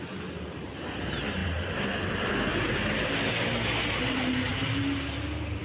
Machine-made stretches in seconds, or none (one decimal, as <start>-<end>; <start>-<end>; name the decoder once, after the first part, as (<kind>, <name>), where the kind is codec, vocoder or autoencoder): none